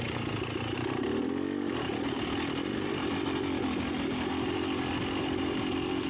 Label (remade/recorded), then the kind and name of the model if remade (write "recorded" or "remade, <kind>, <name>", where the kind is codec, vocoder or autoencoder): recorded